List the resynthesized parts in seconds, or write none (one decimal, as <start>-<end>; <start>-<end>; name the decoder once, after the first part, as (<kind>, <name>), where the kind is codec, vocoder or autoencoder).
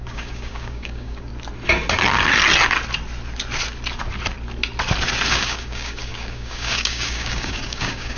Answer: 0.0-1.3 (codec, DAC); 5.3-8.2